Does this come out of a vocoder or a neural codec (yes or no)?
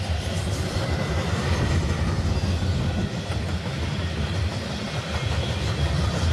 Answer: no